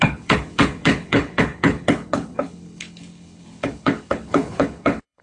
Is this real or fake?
fake